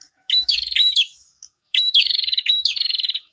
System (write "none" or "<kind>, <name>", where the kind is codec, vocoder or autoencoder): codec, DAC